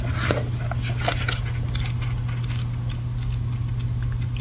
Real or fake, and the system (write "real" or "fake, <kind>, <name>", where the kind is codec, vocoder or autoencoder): real